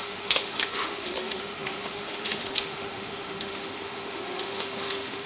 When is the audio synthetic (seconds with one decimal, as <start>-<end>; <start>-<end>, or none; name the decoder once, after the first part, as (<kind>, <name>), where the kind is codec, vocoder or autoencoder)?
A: 0.0-5.3 (autoencoder, DAC-VAE)